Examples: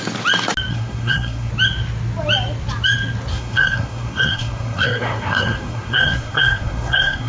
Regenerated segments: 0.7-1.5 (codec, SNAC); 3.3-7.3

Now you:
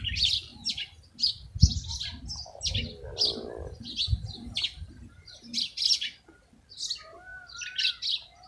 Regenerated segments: none